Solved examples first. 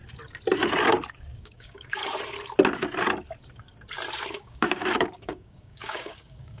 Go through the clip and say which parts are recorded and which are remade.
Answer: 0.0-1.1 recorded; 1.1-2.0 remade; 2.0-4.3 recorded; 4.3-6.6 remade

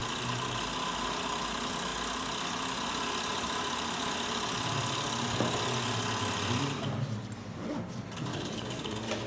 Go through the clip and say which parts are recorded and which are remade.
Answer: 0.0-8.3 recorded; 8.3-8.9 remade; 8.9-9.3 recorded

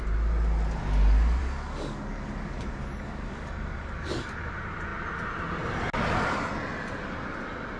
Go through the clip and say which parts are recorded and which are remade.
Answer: 0.0-1.4 recorded; 1.4-4.5 remade; 4.5-7.8 recorded